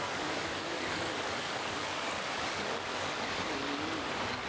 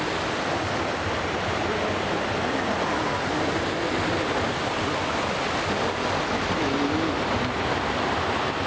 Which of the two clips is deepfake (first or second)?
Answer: first